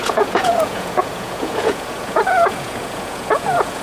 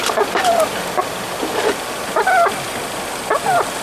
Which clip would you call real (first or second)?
second